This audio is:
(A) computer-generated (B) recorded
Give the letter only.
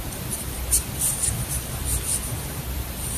B